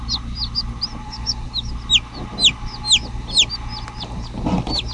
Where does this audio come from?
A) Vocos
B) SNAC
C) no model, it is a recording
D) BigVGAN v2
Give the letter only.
C